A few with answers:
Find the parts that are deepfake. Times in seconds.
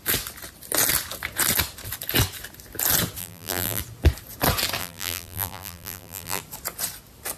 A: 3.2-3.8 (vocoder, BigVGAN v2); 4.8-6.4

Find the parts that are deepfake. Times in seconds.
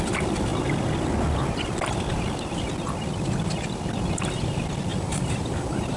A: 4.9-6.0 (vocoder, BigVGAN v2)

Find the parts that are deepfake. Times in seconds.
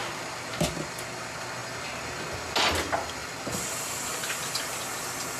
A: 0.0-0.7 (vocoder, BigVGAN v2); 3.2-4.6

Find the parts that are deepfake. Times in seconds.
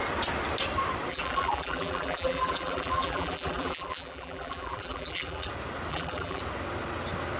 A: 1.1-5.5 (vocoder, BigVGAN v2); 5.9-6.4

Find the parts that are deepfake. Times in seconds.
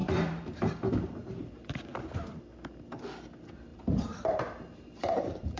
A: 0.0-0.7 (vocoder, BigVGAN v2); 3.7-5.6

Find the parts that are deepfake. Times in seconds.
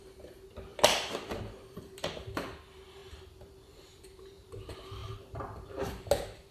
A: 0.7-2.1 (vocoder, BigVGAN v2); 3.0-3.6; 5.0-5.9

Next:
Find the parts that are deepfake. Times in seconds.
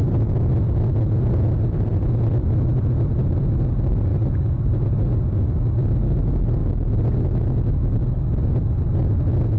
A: 4.1-5.0 (vocoder, BigVGAN v2)